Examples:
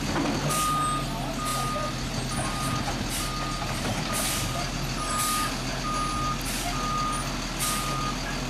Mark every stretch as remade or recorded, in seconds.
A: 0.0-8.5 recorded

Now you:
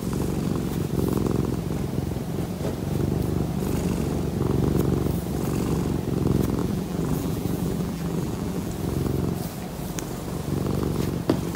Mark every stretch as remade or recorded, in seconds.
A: 0.0-6.6 recorded; 6.6-8.7 remade; 8.7-11.6 recorded

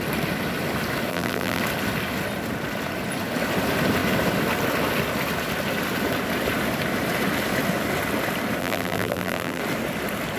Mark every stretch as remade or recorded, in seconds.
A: 0.0-1.1 recorded; 1.1-1.6 remade; 1.6-8.6 recorded; 8.6-9.6 remade; 9.6-10.4 recorded

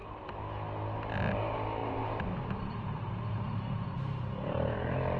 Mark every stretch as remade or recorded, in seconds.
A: 0.0-1.8 recorded; 1.8-5.2 remade

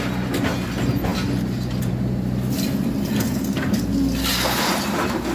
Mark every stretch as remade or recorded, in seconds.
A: 0.0-5.3 recorded

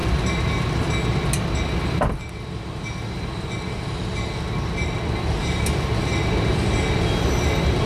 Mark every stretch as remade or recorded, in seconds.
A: 0.0-7.9 recorded

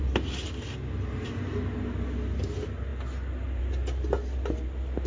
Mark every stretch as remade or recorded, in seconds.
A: 0.0-5.1 recorded

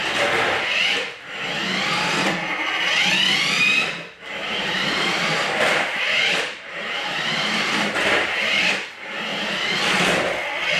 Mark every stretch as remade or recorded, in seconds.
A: 0.0-4.4 recorded; 4.4-8.7 remade; 8.7-9.3 recorded; 9.3-9.8 remade; 9.8-10.8 recorded